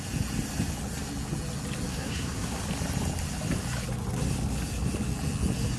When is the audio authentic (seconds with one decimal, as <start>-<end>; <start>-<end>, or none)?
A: 0.0-1.9; 2.6-5.8